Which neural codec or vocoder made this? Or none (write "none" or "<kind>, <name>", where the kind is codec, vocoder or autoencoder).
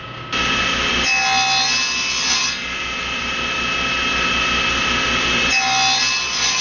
none